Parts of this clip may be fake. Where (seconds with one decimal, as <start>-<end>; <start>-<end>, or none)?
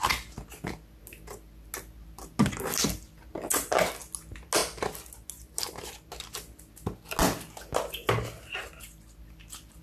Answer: none